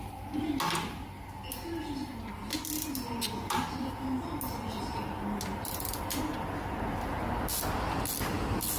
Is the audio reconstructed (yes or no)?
no